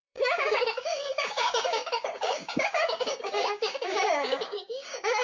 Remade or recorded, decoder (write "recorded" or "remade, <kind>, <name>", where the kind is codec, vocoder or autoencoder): remade, codec, DAC